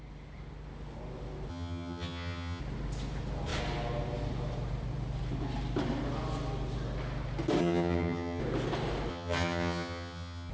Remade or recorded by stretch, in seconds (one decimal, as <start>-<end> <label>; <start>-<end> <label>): 0.0-1.5 recorded; 1.5-2.6 remade; 2.6-7.6 recorded; 7.6-8.4 remade; 8.4-9.1 recorded; 9.1-10.5 remade

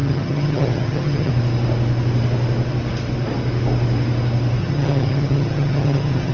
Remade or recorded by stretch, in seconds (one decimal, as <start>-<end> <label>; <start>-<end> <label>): 0.0-1.3 remade; 1.3-4.6 recorded; 4.6-6.3 remade

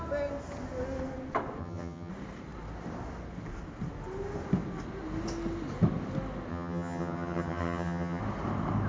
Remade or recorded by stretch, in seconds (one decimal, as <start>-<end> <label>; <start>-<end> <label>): 0.0-1.6 recorded; 1.6-2.1 remade; 2.1-6.5 recorded; 6.5-8.2 remade; 8.2-8.9 recorded

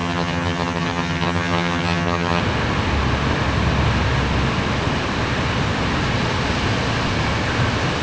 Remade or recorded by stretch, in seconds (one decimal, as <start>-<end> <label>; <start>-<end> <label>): 0.0-2.4 remade; 2.4-8.0 recorded

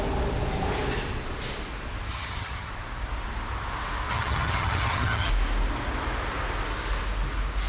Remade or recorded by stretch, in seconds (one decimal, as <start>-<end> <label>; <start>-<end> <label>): 0.0-2.1 recorded; 2.1-2.7 remade; 2.7-4.1 recorded; 4.1-5.3 remade; 5.3-7.7 recorded

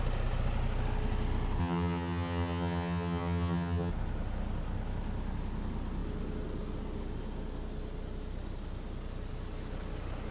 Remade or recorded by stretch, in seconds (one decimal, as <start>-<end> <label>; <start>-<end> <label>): 0.0-1.6 recorded; 1.6-3.9 remade; 3.9-10.3 recorded